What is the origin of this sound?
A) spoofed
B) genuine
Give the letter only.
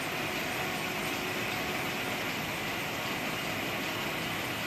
B